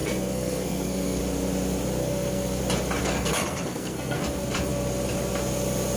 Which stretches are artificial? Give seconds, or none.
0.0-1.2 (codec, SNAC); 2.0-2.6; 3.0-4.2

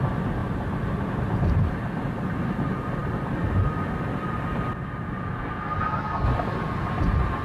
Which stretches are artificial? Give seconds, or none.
0.4-1.4 (vocoder, BigVGAN v2); 3.0-5.5

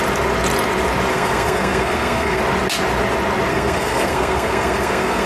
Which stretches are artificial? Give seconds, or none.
1.1-2.4 (codec, SNAC); 3.5-5.3

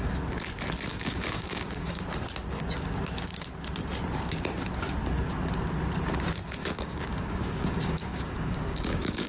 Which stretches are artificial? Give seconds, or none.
0.9-2.0 (codec, DAC); 6.6-9.3